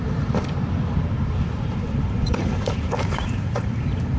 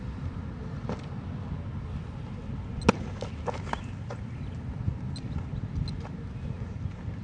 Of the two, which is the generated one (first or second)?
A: first